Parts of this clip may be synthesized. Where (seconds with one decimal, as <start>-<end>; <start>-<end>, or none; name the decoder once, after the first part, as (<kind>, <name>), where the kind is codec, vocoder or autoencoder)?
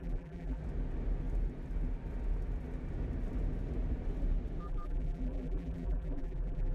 0.0-0.6 (vocoder, BigVGAN v2); 4.6-6.7